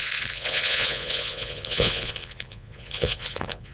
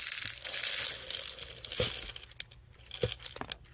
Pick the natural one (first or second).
second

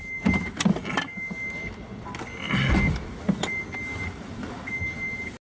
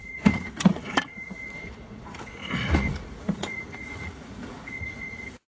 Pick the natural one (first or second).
first